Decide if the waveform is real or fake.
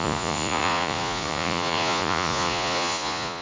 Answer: fake